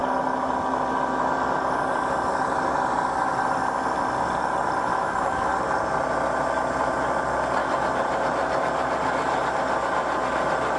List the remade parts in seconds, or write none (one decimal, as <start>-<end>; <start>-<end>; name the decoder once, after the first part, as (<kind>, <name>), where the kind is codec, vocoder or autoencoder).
4.9-5.5 (autoencoder, DAC-VAE)